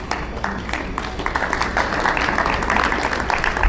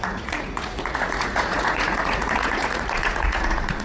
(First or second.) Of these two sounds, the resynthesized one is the second